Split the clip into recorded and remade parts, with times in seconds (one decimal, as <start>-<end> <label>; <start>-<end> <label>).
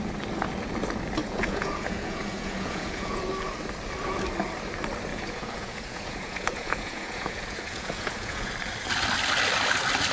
0.0-1.2 recorded; 1.2-3.2 remade; 3.2-5.1 recorded; 5.1-8.5 remade; 8.5-10.1 recorded